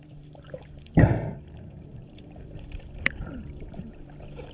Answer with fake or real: fake